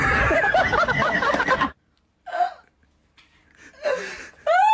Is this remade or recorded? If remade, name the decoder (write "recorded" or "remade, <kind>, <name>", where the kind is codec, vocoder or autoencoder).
recorded